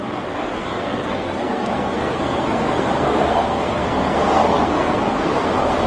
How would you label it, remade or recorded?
remade